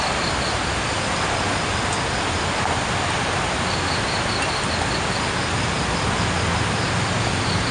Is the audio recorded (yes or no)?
yes